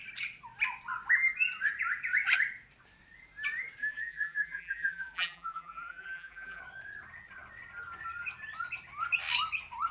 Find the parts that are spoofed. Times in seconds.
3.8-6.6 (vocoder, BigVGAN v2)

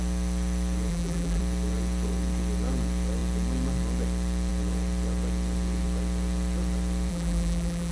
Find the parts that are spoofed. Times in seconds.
0.9-1.4 (vocoder, BigVGAN v2); 7.1-7.9

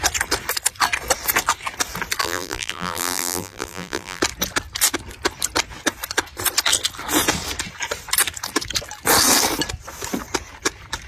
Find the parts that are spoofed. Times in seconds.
2.2-4.2 (vocoder, BigVGAN v2)

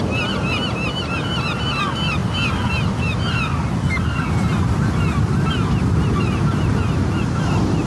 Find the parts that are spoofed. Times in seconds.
none

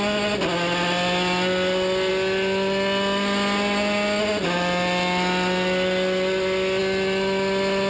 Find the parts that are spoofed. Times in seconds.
none

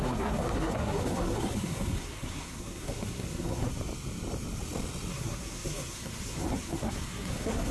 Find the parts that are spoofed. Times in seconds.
0.0-3.7 (codec, SNAC); 5.1-7.7

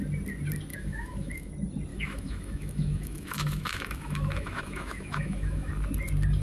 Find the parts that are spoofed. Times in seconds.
0.7-1.5 (autoencoder, DAC-VAE); 1.9-5.7

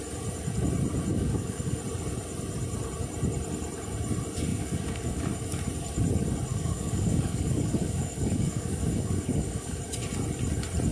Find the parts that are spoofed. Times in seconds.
1.1-1.8 (codec, DAC); 4.5-5.2; 6.5-9.8